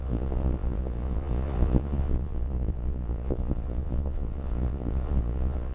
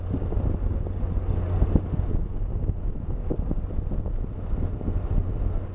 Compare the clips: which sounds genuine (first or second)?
second